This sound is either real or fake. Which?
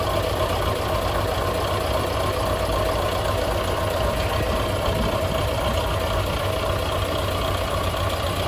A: real